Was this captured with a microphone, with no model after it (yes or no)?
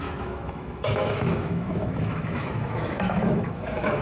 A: no